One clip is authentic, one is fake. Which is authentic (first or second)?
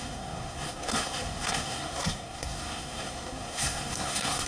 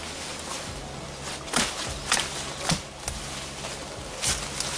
second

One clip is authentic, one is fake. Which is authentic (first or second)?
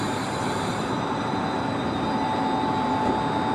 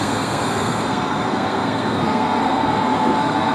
first